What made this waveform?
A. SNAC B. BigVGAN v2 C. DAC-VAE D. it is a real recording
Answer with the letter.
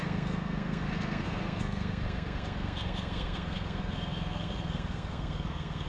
A